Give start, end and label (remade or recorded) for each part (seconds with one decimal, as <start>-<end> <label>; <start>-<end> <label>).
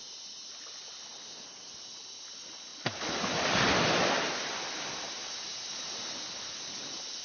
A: 0.0-7.2 recorded